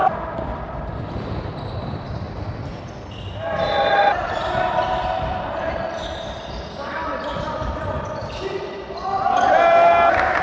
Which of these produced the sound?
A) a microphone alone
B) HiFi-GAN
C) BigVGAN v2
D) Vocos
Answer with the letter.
C